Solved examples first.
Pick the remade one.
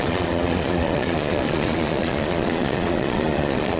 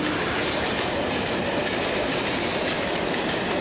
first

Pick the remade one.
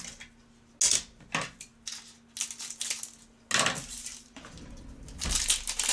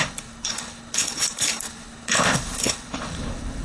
second